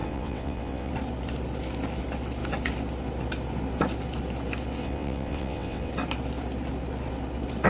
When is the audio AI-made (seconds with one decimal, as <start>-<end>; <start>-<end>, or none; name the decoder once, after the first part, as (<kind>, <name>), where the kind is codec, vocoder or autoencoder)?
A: 0.0-0.9 (vocoder, WaveNeXt); 4.8-5.9